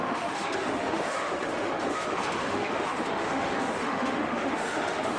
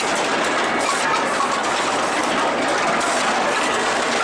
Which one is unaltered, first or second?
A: second